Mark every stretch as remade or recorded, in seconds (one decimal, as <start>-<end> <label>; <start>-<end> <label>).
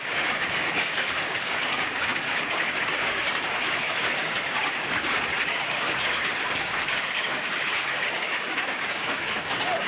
0.0-9.9 remade